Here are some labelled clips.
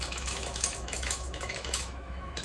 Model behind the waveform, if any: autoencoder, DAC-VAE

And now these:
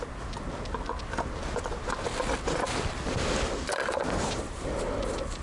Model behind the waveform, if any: none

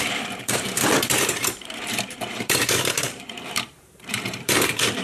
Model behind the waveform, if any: vocoder, BigVGAN v2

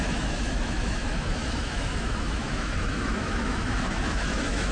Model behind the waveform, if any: autoencoder, DAC-VAE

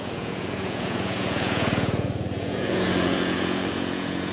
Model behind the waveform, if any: vocoder, Vocos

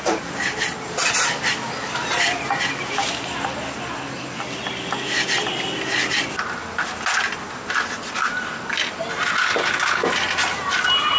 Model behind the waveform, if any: none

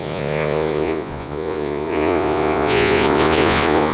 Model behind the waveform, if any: vocoder, Vocos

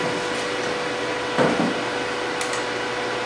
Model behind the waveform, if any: none